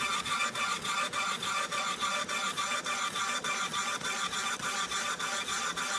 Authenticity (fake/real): fake